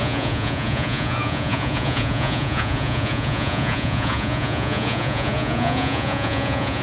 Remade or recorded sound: remade